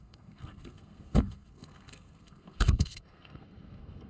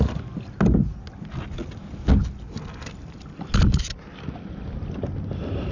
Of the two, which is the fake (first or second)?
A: first